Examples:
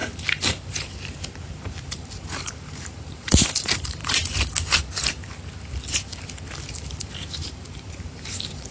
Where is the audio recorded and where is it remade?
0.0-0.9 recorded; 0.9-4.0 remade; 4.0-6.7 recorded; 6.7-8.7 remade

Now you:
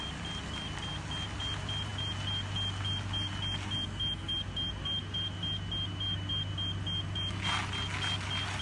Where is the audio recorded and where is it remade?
0.0-8.6 recorded

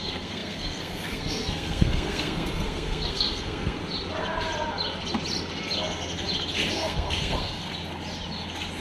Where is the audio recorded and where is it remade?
0.0-3.8 remade; 3.8-6.7 recorded; 6.7-7.7 remade; 7.7-8.8 recorded

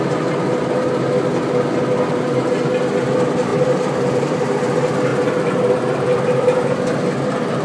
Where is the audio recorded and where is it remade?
0.0-5.1 recorded; 5.1-6.7 remade; 6.7-7.6 recorded